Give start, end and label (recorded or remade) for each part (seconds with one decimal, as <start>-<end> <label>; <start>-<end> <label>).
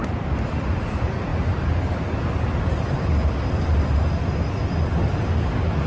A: 0.0-5.9 recorded